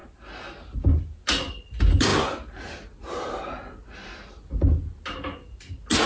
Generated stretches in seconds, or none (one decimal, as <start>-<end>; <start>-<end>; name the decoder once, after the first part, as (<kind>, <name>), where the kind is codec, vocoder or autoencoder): none